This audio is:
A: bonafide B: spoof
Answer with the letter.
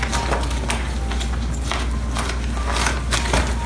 A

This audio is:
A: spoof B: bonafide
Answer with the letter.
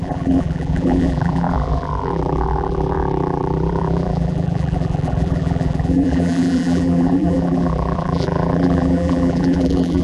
A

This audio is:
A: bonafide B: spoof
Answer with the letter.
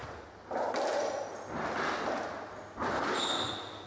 A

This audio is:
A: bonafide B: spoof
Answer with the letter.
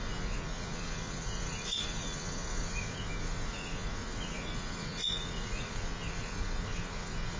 B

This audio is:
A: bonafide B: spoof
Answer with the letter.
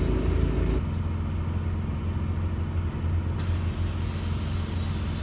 A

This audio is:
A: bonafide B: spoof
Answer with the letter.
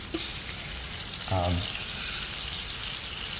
A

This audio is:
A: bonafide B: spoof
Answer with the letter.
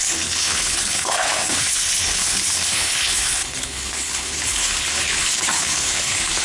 B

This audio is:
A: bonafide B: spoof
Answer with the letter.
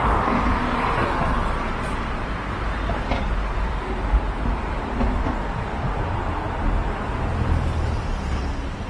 A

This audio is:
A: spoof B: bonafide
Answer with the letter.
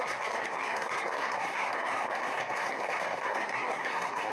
A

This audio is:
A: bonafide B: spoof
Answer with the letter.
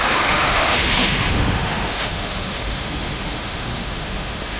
B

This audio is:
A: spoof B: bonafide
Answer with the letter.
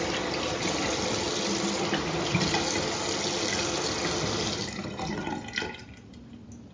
B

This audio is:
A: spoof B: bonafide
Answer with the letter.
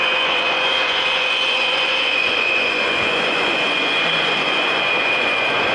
A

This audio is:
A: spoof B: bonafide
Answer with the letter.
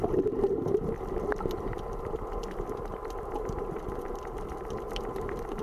B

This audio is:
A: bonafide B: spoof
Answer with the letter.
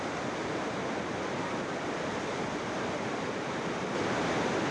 A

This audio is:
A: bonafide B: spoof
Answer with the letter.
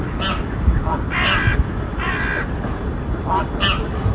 A